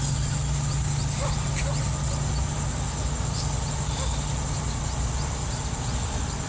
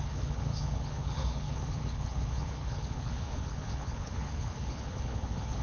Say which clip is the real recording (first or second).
first